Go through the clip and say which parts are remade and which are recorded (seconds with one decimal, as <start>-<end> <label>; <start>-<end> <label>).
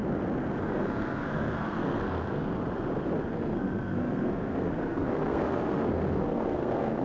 0.0-0.6 recorded; 0.6-2.5 remade; 2.5-3.3 recorded; 3.3-7.0 remade